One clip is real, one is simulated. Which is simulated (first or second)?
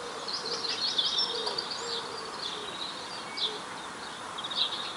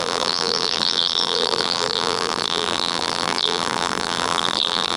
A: second